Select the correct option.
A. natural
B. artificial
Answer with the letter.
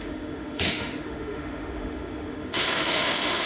B